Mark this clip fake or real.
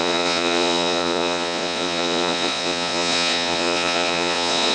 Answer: fake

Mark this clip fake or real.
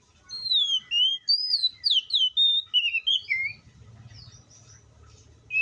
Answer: real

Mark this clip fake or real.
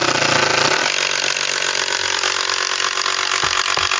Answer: real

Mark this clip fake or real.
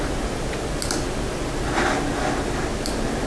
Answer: real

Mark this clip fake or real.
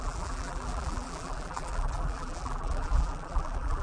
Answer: fake